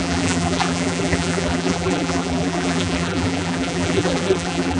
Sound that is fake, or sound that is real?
fake